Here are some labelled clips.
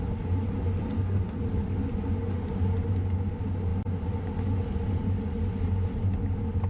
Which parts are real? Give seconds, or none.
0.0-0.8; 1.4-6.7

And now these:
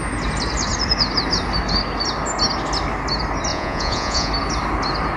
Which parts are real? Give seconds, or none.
0.0-3.5; 4.3-5.2

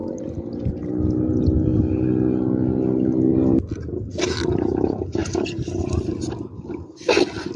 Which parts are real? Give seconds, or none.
0.9-3.3; 3.8-7.6

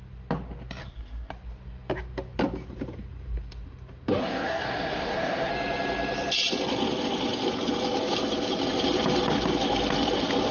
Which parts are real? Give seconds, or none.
0.0-0.8; 1.3-4.2; 5.5-10.5

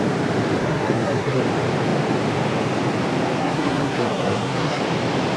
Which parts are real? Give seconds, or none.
0.0-0.6; 1.4-3.4; 4.8-5.4

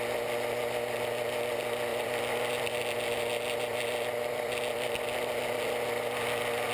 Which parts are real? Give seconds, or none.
0.0-1.9; 5.9-6.7

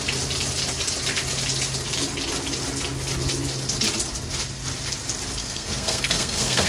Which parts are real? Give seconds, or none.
0.0-5.4

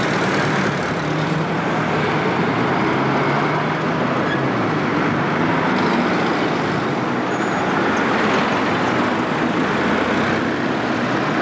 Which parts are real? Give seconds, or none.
0.0-11.4